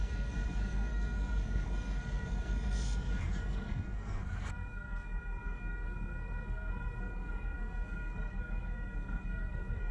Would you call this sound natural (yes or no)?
no